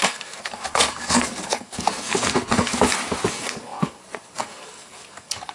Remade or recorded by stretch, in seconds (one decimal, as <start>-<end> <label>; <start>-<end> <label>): 0.0-2.7 remade; 2.7-3.3 recorded; 3.3-5.5 remade